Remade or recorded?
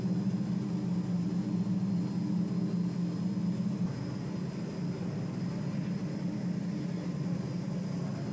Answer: recorded